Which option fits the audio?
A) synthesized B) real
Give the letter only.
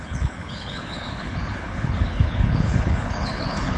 A